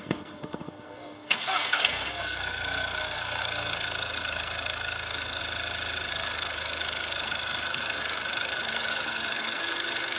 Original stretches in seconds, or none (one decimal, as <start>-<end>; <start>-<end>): 5.4-6.1